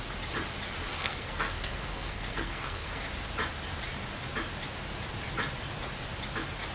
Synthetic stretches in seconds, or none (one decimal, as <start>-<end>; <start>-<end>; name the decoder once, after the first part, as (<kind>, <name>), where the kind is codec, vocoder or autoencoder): 0.9-3.1 (codec, SNAC)